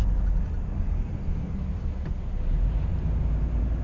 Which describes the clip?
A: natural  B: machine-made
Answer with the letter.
A